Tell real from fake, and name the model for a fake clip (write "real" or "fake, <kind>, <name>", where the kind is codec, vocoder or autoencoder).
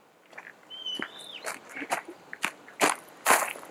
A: real